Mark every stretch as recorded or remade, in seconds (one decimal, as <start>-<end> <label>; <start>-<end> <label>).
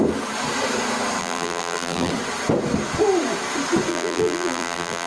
0.0-1.2 recorded; 1.2-2.1 remade; 2.1-3.9 recorded; 3.9-5.1 remade